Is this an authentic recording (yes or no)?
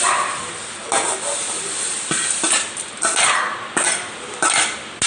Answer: yes